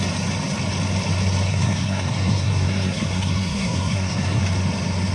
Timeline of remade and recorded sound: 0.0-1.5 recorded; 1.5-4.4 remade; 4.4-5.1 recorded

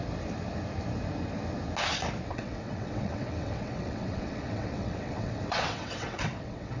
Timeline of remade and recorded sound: 0.0-2.3 recorded; 2.3-6.8 remade

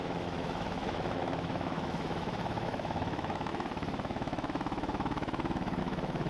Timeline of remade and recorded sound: 0.0-6.3 remade